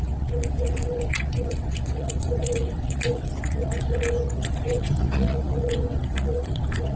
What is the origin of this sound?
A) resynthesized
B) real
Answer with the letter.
A